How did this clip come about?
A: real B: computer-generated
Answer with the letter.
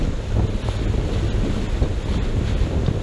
A